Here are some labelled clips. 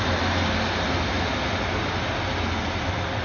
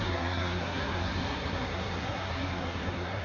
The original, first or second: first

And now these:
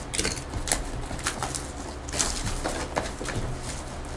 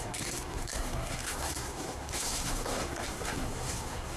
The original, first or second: first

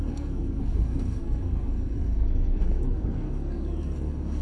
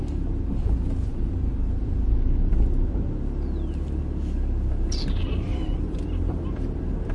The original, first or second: second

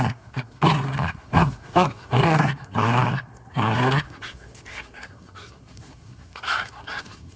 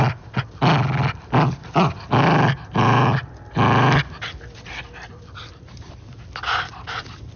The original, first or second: second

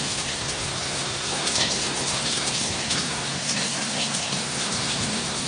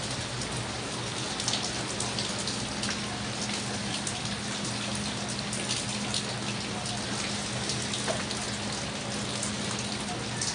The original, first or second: second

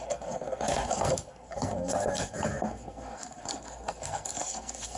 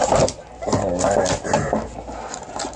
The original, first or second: second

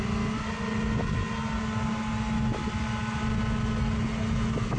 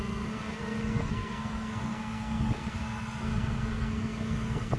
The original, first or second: first